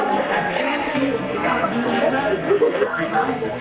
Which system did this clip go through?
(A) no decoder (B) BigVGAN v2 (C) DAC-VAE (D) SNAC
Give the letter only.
D